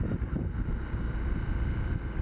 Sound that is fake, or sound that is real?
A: real